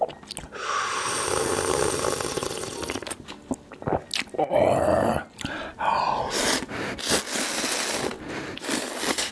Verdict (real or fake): real